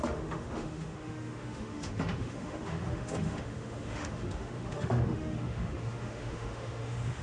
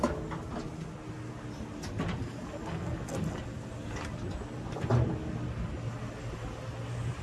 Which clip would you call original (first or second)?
second